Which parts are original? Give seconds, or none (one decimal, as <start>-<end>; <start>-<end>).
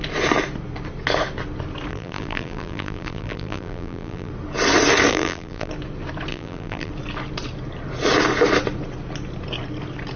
0.0-1.9; 4.3-5.1; 5.7-6.3; 6.9-10.2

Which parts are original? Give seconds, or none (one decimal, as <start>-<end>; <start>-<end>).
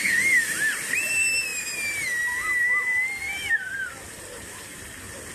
0.0-5.3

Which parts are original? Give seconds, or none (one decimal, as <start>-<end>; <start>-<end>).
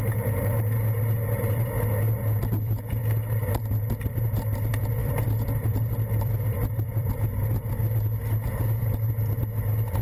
0.0-5.0; 7.7-10.0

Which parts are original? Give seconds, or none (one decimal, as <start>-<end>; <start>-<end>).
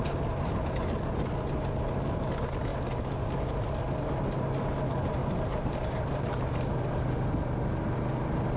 0.0-5.2; 6.8-8.6